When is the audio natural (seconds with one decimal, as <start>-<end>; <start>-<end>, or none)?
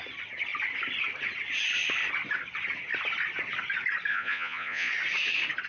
0.0-4.1; 4.9-5.7